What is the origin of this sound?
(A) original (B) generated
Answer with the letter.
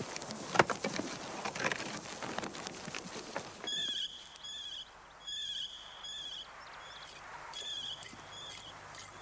A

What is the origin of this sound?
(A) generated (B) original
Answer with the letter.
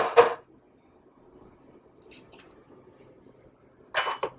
B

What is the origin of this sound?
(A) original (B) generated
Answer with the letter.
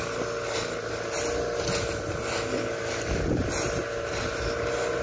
A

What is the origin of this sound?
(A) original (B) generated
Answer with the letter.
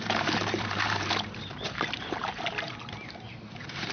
B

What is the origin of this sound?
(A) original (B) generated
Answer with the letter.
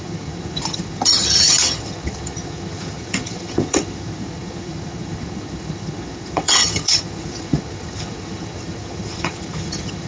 B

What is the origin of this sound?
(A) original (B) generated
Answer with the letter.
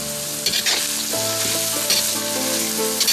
A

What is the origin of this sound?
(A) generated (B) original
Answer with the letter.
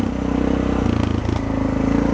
B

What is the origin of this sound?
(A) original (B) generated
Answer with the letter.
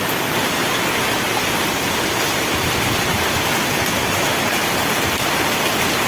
A